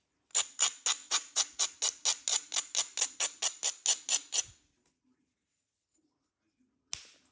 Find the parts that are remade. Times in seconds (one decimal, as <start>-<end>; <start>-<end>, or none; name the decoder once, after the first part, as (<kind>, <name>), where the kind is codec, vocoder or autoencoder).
1.0-1.6 (vocoder, Vocos)